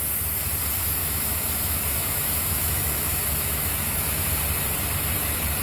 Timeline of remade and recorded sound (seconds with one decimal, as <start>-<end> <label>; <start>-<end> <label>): 0.0-1.0 recorded; 1.0-4.4 remade; 4.4-5.6 recorded